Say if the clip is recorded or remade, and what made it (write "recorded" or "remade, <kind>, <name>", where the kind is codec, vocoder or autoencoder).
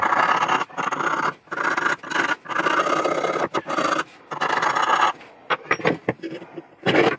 recorded